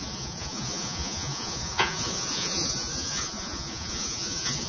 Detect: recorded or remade remade